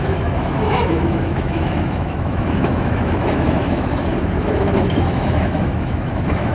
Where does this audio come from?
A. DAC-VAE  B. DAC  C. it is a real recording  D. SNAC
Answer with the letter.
A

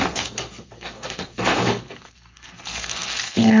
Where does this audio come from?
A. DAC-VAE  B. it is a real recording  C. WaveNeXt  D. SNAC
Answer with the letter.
D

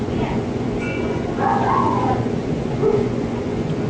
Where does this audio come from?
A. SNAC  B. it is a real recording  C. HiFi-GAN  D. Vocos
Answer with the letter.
D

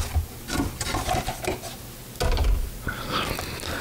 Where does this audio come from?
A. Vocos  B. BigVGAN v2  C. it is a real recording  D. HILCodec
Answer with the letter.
C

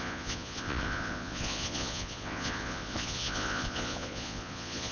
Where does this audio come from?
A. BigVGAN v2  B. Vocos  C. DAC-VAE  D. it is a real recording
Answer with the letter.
B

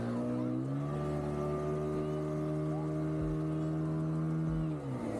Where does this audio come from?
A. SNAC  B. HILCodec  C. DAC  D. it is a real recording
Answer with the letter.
D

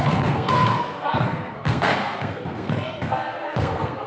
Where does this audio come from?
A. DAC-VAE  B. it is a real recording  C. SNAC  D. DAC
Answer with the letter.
C